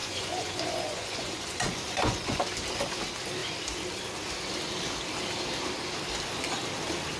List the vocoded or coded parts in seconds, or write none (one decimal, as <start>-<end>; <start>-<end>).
0.0-2.4